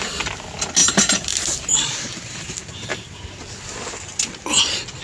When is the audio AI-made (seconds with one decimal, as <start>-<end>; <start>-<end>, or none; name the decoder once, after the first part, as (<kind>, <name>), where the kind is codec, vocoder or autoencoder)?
0.8-2.9 (vocoder, BigVGAN v2)